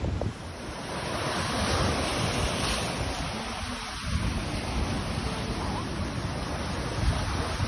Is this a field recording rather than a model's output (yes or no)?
yes